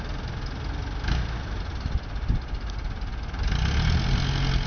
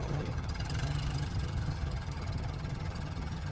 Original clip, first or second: first